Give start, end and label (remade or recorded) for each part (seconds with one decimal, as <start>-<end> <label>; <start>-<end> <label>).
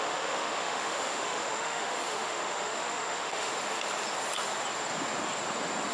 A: 0.0-3.5 remade; 3.5-5.9 recorded